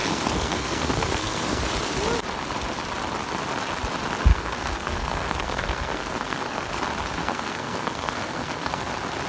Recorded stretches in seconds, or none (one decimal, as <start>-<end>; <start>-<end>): 1.6-4.3; 6.8-7.2; 8.9-9.3